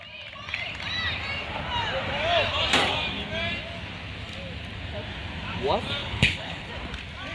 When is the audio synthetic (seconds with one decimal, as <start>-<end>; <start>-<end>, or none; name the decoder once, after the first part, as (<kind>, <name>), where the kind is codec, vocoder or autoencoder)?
6.0-6.7 (codec, HILCodec)